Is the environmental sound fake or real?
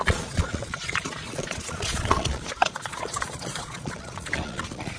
fake